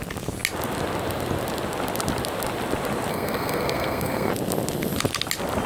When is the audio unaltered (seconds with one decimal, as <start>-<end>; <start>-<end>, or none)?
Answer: 0.0-3.1; 4.3-5.7